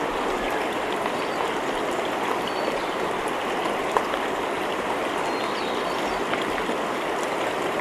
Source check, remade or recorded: recorded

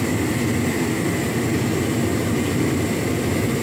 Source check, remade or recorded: recorded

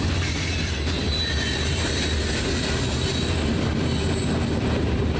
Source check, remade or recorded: recorded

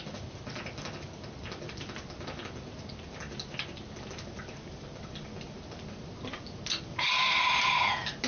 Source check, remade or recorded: recorded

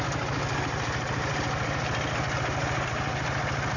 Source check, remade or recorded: recorded